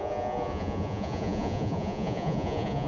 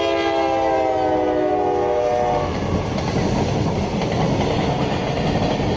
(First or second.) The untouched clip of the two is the second